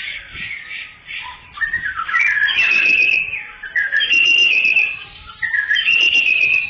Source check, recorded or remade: remade